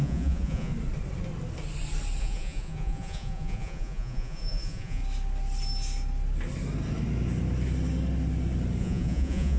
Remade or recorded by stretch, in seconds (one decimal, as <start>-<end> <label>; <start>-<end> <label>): 0.0-0.7 remade; 0.7-2.2 recorded; 2.2-5.0 remade; 5.0-8.8 recorded; 8.8-9.6 remade